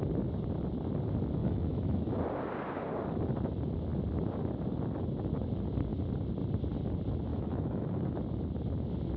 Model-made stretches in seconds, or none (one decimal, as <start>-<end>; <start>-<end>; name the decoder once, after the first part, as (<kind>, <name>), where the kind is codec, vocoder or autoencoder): 1.4-2.2 (autoencoder, DAC-VAE); 7.3-8.2